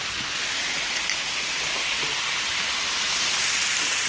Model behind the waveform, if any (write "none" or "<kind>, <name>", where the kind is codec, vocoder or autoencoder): none